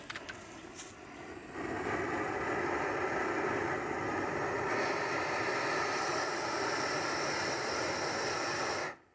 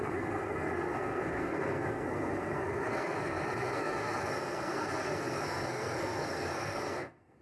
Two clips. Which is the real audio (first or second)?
first